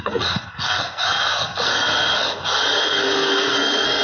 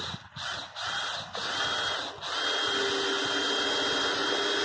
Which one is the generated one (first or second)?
first